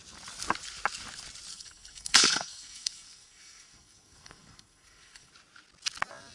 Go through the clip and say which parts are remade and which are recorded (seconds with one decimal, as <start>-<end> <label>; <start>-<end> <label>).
0.0-1.5 recorded; 1.5-5.3 remade; 5.3-6.3 recorded